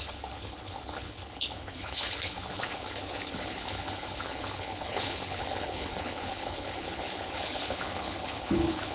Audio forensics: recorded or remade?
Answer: remade